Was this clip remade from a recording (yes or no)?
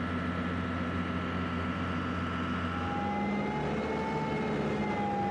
no